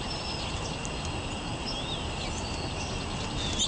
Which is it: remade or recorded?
recorded